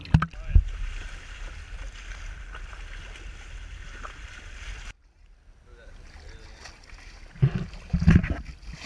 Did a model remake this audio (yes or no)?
no